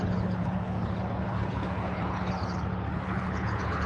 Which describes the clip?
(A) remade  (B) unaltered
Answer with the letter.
A